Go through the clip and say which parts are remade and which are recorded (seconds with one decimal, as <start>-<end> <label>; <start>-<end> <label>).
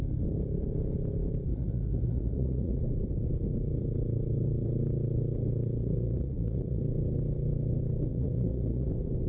0.0-1.5 recorded; 1.5-2.8 remade; 2.8-5.8 recorded; 5.8-6.8 remade; 6.8-8.1 recorded; 8.1-8.9 remade; 8.9-9.3 recorded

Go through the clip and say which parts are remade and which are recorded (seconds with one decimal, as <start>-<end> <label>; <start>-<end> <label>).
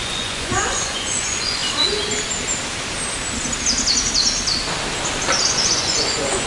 0.0-1.6 remade; 1.6-5.5 recorded; 5.5-6.5 remade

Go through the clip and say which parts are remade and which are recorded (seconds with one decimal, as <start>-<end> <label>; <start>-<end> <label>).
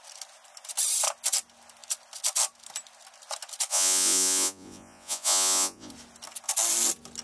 0.0-3.7 recorded; 3.7-5.9 remade; 5.9-7.2 recorded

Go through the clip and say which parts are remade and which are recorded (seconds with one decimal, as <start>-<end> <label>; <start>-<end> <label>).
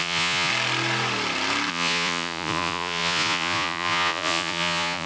0.0-0.5 remade; 0.5-1.7 recorded; 1.7-5.1 remade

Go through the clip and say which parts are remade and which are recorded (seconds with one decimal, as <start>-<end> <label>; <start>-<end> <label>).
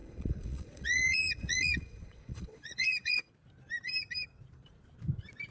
0.0-3.3 remade; 3.3-5.5 recorded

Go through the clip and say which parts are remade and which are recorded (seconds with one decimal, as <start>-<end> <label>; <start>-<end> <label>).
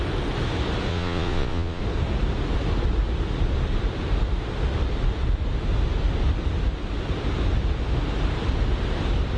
0.0-0.9 recorded; 0.9-1.8 remade; 1.8-9.4 recorded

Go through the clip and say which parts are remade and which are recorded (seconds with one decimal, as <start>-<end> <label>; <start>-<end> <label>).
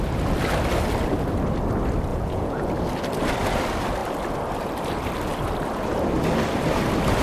0.0-2.1 recorded; 2.1-2.7 remade; 2.7-7.2 recorded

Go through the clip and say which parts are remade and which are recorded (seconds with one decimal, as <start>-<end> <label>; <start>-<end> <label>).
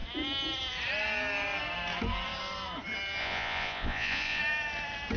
0.0-3.2 recorded; 3.2-4.4 remade; 4.4-5.2 recorded